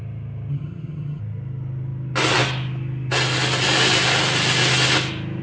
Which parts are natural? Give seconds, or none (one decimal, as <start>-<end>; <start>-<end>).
0.0-0.5; 1.2-5.4